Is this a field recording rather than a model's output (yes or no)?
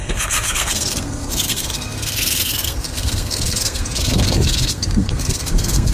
no